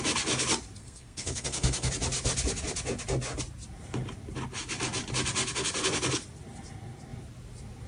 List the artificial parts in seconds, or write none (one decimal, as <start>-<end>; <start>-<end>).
0.8-1.9